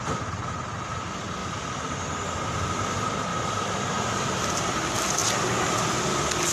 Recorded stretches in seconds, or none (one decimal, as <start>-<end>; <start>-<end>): 0.0-1.4; 2.8-3.3; 4.7-6.5